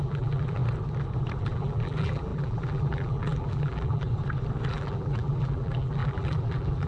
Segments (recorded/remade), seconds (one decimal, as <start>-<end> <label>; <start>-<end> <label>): 0.0-0.6 remade; 0.6-1.4 recorded; 1.4-4.1 remade; 4.1-4.7 recorded; 4.7-6.9 remade

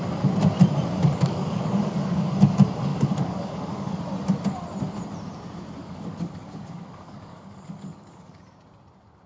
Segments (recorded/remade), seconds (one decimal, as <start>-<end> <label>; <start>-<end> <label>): 0.0-1.0 recorded; 1.0-2.2 remade; 2.2-2.9 recorded; 2.9-4.0 remade; 4.0-5.8 recorded; 5.8-8.4 remade; 8.4-9.3 recorded

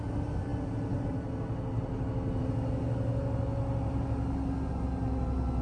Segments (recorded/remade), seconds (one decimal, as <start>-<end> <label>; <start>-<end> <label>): 0.0-5.6 recorded

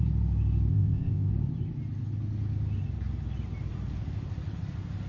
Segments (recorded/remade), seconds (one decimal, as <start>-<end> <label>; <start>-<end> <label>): 0.0-0.7 recorded; 0.7-1.3 remade; 1.3-5.1 recorded

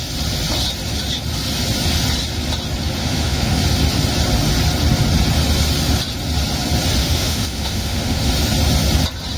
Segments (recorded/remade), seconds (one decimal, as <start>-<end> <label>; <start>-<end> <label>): 0.0-3.0 recorded; 3.0-3.6 remade; 3.6-7.0 recorded; 7.0-8.3 remade; 8.3-9.4 recorded

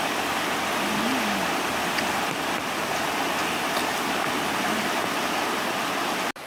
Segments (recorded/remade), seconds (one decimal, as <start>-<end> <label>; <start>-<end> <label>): 0.0-6.5 recorded

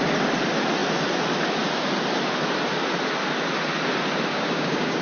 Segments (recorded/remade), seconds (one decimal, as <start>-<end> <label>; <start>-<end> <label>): 0.0-4.3 recorded; 4.3-5.0 remade